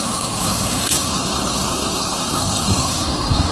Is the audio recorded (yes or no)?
no